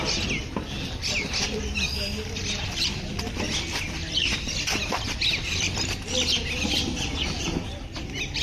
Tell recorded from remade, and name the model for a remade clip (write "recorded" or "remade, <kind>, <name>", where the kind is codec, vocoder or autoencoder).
recorded